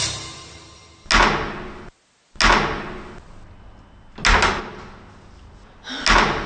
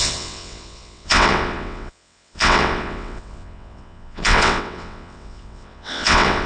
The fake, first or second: second